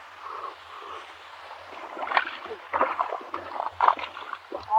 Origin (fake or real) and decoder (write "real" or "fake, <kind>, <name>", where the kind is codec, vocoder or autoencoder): fake, vocoder, BigVGAN v2